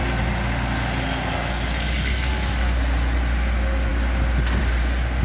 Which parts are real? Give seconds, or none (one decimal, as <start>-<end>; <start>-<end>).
0.0-5.2